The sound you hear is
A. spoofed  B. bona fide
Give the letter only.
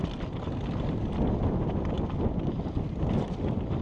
B